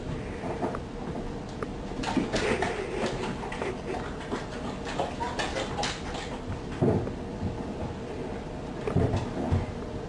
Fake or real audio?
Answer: real